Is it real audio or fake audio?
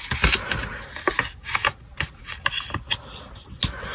real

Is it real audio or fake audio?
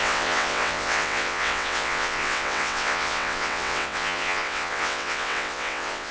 fake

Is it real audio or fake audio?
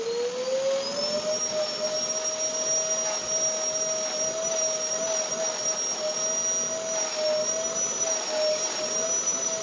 real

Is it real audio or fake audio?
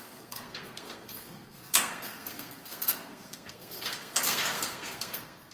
fake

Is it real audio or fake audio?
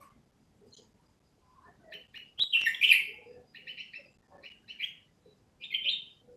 real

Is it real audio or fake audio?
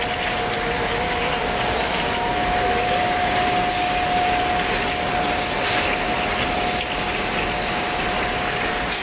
real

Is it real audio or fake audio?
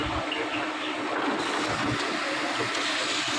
real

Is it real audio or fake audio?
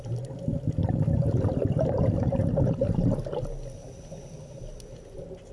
real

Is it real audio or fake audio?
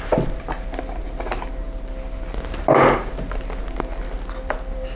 real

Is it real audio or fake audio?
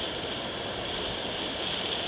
fake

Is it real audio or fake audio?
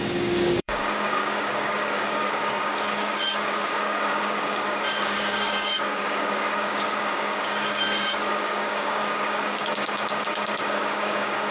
fake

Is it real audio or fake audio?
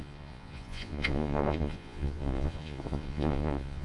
fake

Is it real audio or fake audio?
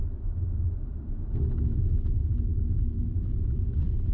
real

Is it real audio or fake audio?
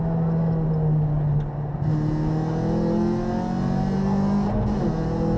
real